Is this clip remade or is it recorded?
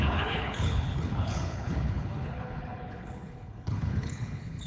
remade